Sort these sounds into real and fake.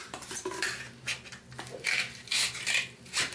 real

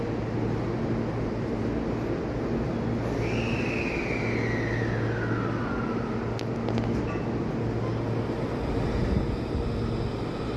real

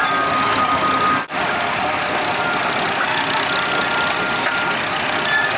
real